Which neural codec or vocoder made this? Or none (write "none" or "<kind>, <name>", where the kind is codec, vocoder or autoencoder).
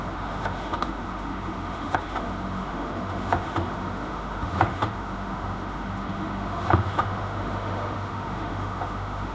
autoencoder, DAC-VAE